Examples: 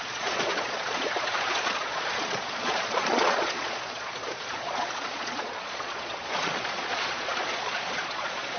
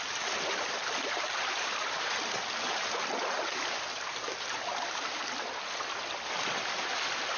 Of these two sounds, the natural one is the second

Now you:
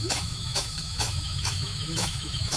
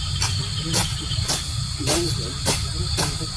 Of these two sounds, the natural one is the second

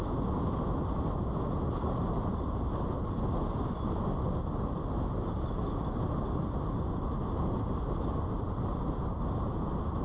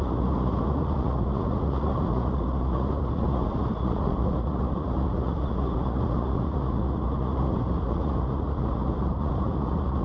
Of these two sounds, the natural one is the first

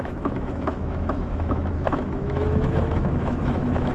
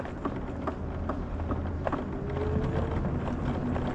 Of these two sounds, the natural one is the second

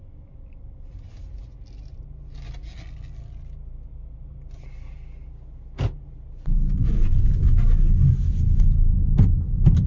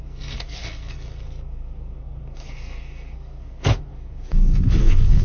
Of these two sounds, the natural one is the first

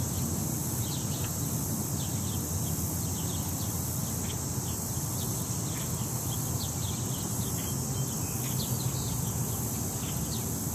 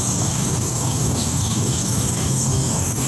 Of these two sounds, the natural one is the first